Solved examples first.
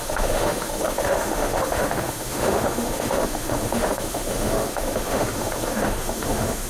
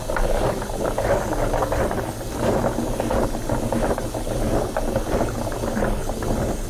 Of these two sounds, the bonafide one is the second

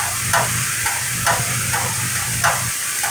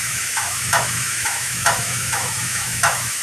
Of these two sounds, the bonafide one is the first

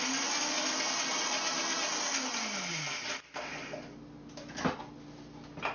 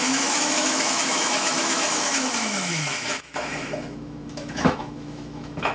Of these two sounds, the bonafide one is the first